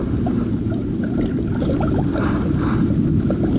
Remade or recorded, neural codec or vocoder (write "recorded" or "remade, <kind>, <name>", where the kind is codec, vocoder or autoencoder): recorded